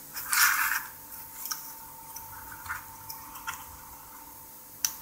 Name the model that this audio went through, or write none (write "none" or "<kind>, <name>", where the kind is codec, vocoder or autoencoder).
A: none